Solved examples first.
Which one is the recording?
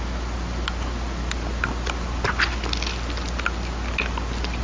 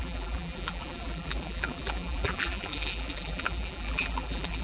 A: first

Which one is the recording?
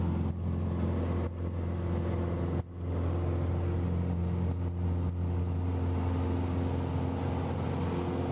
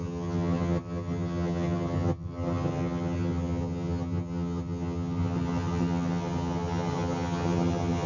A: first